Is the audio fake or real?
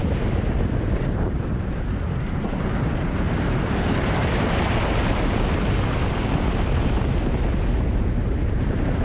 fake